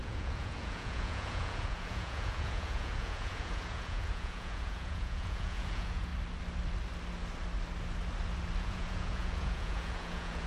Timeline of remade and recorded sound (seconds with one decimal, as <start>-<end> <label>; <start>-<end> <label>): 0.0-6.1 remade; 6.1-8.6 recorded; 8.6-10.5 remade